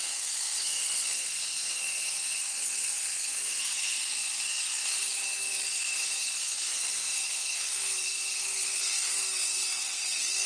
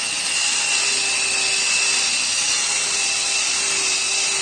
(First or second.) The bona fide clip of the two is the second